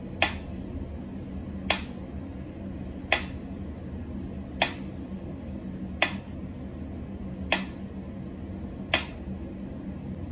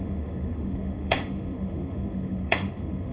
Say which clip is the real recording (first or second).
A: first